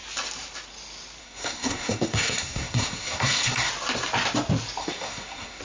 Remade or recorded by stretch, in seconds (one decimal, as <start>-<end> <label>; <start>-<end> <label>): 0.0-1.2 recorded; 1.2-3.7 remade; 3.7-4.8 recorded; 4.8-5.6 remade

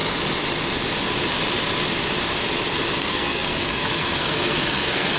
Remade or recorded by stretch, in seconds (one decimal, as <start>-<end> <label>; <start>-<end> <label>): 0.0-3.0 recorded; 3.0-5.2 remade

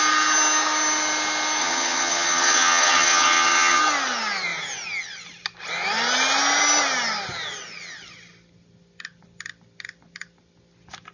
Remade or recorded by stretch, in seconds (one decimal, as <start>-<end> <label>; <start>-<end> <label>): 0.0-1.6 recorded; 1.6-3.8 remade; 3.8-11.1 recorded